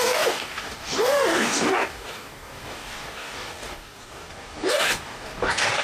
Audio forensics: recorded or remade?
remade